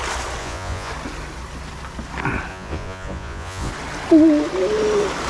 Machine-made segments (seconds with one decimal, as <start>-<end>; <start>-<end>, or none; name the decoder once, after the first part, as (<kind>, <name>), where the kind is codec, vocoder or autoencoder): 0.4-0.9 (vocoder, Vocos); 2.5-3.7